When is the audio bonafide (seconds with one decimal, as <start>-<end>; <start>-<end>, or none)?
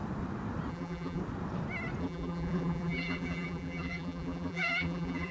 0.0-0.7; 1.2-2.0